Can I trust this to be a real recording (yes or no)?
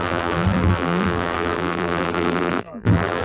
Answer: no